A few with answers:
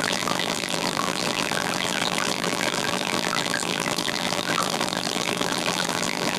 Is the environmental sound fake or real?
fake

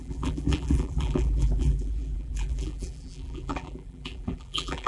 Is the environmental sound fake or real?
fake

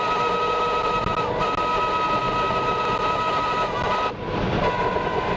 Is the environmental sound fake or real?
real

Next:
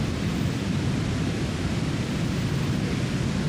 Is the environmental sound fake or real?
real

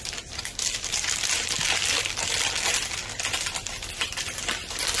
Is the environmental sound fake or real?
real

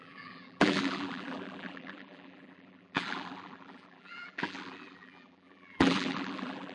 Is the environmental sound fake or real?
fake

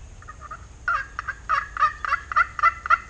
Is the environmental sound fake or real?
real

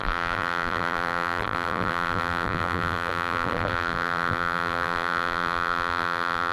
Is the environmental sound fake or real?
fake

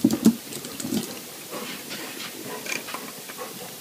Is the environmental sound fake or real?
fake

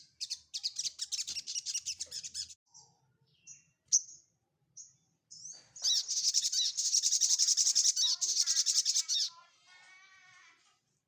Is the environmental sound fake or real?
real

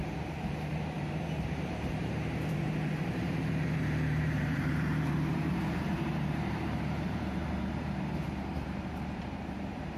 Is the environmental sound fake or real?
fake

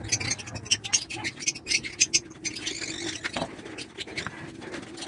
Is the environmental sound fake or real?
real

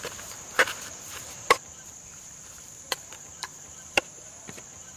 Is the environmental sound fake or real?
fake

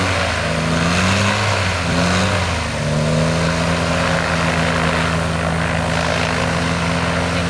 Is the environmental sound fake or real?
real